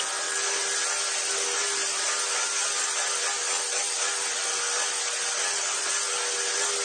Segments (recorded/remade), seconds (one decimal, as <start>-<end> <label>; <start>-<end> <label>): 0.0-6.8 recorded